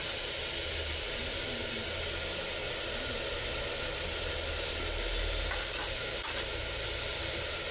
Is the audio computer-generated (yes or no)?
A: no